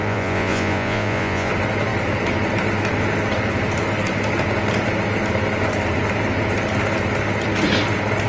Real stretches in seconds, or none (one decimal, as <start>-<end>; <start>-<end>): 1.5-8.3